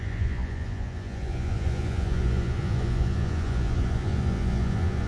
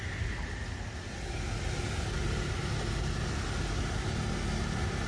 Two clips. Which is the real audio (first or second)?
second